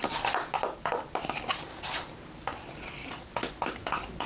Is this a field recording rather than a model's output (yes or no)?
yes